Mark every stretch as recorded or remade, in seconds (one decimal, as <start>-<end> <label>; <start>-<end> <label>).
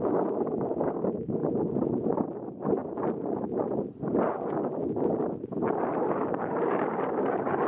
0.0-1.4 remade; 1.4-4.3 recorded; 4.3-4.8 remade; 4.8-6.0 recorded; 6.0-7.7 remade